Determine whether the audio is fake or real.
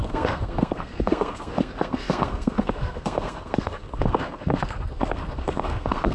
fake